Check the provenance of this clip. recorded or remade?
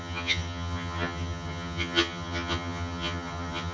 remade